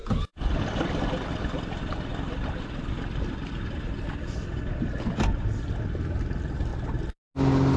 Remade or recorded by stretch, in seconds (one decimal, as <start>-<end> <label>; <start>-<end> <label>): 0.0-7.8 recorded